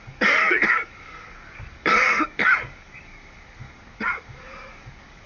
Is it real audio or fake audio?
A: fake